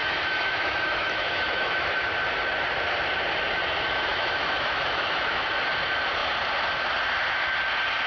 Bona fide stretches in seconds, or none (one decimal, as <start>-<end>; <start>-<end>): 2.1-4.1; 5.5-8.1